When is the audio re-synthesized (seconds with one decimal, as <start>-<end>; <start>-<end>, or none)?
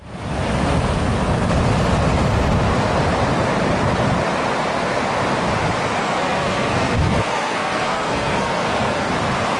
6.0-9.1